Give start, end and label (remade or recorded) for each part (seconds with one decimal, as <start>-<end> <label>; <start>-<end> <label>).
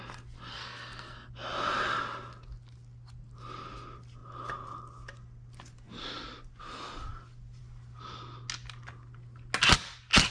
0.0-0.5 recorded; 0.5-1.3 remade; 1.3-10.3 recorded